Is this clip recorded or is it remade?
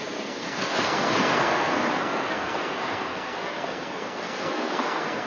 remade